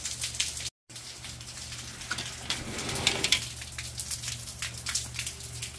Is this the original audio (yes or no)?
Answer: yes